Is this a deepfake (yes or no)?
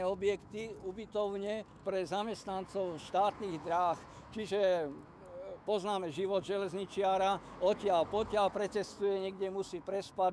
yes